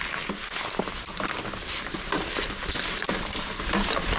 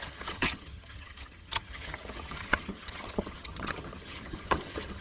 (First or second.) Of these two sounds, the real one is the first